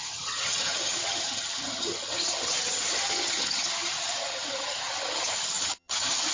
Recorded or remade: remade